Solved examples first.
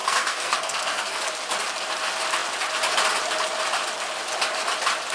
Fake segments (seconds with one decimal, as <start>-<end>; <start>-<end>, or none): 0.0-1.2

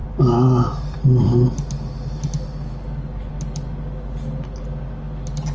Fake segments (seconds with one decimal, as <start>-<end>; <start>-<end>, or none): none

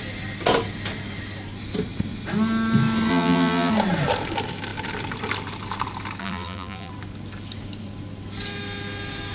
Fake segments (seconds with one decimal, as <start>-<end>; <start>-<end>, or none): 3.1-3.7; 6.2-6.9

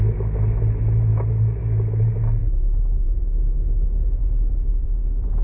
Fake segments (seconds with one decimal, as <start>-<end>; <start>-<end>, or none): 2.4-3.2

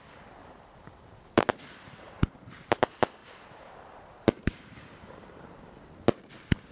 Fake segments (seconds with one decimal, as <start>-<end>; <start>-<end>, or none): 0.4-2.8; 3.2-5.6

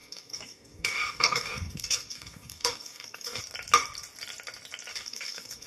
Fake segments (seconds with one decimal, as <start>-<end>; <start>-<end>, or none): 0.0-3.4; 4.9-5.7